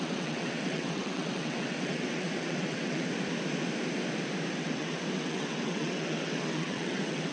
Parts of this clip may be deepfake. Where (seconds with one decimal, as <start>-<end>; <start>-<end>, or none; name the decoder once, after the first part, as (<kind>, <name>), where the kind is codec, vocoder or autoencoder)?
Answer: 0.0-3.1 (vocoder, WaveNeXt); 4.5-7.3